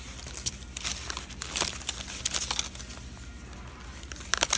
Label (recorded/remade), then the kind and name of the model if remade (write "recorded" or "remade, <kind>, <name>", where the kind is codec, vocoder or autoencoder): recorded